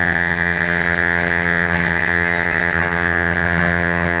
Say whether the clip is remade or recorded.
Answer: remade